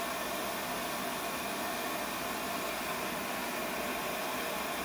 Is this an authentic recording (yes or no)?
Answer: yes